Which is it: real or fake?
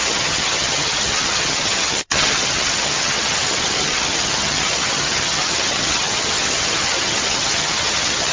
fake